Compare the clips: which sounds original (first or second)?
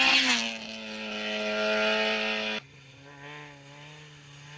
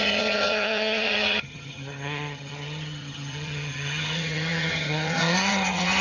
first